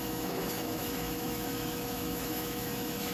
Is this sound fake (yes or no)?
yes